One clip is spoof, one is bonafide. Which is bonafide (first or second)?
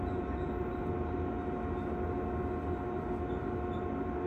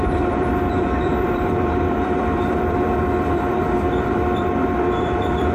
first